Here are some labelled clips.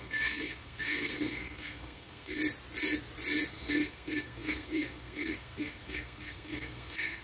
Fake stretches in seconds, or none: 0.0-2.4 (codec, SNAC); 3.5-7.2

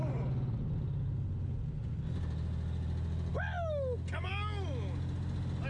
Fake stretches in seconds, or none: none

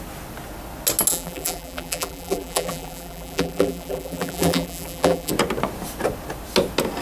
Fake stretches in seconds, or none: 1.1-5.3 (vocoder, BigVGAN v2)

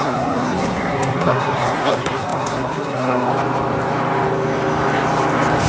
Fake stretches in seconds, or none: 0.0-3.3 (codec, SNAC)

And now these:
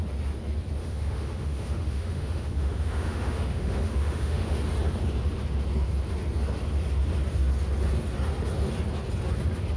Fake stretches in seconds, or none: 0.8-4.6 (autoencoder, DAC-VAE)